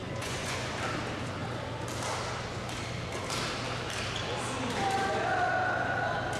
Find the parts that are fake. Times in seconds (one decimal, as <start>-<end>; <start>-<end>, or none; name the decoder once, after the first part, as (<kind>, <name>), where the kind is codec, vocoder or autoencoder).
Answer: 0.0-0.7 (vocoder, Vocos)